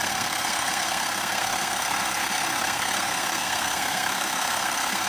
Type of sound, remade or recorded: remade